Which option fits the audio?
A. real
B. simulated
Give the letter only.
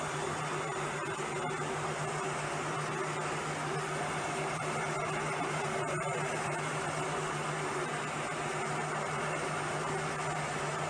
A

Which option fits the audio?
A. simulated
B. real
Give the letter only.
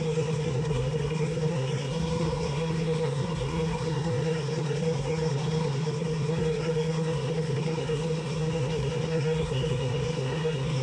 A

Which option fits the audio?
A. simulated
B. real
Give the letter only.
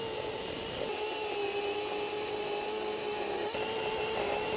B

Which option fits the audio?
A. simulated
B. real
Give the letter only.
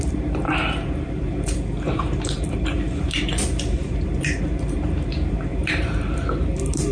A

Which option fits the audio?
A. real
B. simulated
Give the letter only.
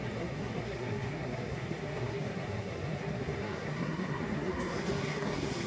B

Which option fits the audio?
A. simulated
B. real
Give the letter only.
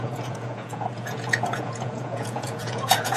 A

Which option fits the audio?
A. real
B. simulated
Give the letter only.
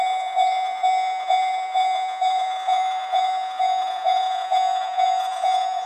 B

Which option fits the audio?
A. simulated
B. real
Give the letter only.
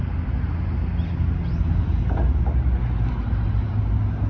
B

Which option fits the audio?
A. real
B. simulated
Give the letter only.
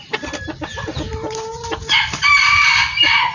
A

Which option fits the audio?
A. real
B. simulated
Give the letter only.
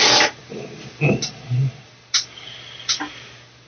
A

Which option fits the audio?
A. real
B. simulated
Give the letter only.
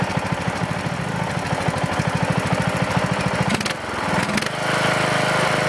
A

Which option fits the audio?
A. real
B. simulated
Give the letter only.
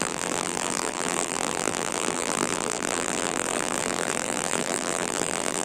B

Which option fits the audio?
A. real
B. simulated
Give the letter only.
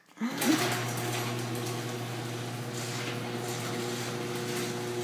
A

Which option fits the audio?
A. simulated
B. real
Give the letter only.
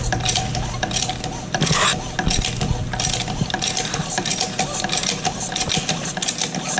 B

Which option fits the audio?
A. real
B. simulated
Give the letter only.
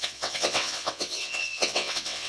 B